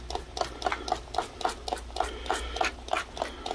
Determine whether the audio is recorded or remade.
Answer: recorded